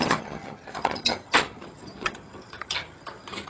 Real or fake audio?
fake